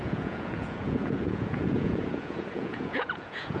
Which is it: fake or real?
fake